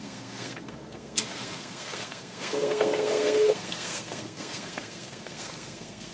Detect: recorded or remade remade